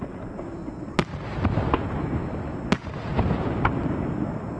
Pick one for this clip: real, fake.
real